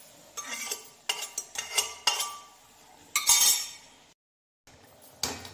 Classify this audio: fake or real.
real